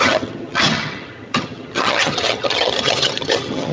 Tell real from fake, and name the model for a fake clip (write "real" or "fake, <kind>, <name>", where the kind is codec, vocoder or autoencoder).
fake, vocoder, HiFi-GAN